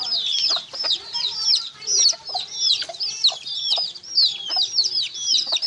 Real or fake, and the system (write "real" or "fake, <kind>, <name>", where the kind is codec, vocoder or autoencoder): fake, vocoder, BigVGAN v2